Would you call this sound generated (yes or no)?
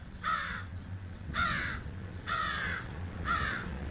yes